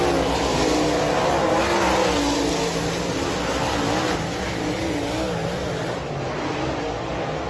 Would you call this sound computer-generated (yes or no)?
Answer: no